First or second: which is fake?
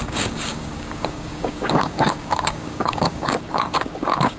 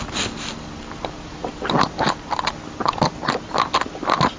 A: first